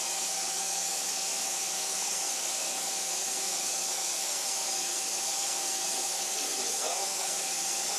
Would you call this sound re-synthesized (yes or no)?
yes